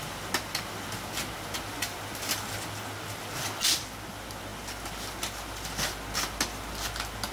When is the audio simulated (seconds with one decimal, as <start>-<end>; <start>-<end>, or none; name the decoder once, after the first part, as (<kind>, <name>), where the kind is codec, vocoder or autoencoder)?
none